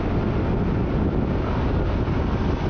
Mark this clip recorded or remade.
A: recorded